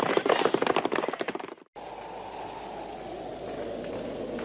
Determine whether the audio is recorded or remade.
recorded